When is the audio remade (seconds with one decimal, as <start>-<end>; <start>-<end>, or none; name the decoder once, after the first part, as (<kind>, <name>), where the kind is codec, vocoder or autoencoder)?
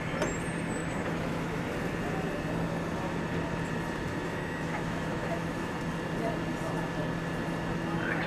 0.8-1.6 (autoencoder, DAC-VAE); 4.1-5.8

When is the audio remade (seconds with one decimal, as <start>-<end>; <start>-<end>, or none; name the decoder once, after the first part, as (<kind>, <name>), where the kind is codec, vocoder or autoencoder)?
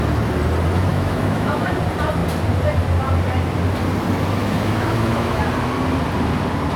0.9-1.7 (autoencoder, DAC-VAE); 4.4-5.4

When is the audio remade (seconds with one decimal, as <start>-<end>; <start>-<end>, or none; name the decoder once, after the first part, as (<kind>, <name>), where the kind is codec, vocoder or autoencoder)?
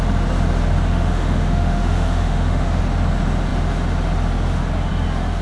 0.9-2.8 (autoencoder, DAC-VAE)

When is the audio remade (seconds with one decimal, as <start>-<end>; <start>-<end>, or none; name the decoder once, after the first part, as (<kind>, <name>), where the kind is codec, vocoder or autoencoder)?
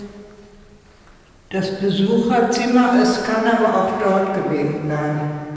0.0-0.5 (autoencoder, DAC-VAE); 2.7-5.6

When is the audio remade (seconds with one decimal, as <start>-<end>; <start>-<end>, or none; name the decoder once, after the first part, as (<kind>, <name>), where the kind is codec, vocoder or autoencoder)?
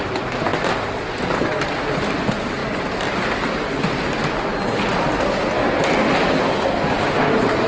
none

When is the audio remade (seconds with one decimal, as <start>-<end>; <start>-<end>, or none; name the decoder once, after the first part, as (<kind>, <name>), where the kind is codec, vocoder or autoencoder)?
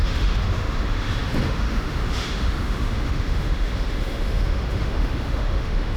0.0-6.0 (autoencoder, DAC-VAE)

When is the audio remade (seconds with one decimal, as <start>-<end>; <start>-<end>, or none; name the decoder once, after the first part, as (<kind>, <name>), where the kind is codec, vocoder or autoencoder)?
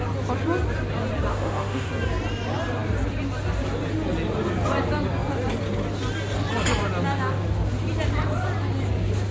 1.3-1.9 (autoencoder, DAC-VAE)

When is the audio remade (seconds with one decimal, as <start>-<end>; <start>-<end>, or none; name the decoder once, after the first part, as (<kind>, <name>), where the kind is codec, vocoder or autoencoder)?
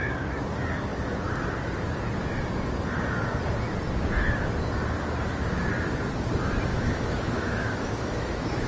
6.7-8.7 (autoencoder, DAC-VAE)